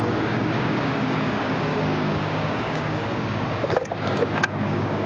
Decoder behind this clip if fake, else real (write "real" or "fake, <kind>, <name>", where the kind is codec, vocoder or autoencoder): fake, codec, DAC